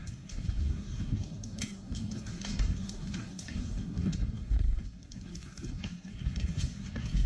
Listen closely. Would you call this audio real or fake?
fake